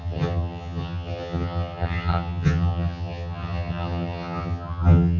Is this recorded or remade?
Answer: remade